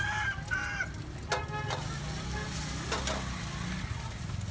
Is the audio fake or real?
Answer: real